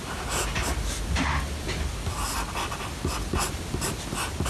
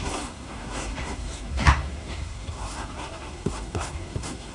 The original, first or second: first